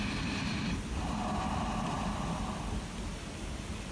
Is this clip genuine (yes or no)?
yes